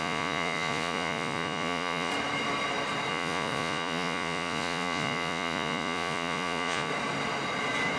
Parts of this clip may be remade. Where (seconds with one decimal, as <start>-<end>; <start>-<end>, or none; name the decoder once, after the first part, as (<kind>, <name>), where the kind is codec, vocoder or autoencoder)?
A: 0.0-2.1 (vocoder, Vocos); 3.1-6.9